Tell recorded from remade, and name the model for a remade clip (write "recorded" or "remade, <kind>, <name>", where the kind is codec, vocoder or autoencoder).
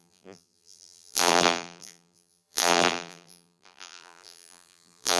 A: remade, vocoder, BigVGAN v2